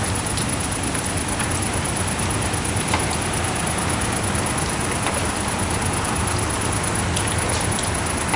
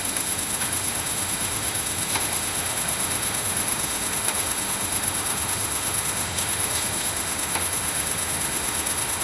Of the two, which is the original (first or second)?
first